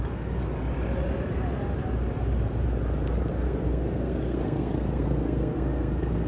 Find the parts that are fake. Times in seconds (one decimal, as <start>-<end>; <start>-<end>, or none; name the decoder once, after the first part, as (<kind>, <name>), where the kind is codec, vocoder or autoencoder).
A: 0.0-0.4 (codec, SNAC); 3.3-6.3